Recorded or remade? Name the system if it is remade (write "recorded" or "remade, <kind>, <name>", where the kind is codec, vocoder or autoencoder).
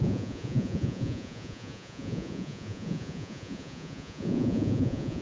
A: remade, vocoder, Vocos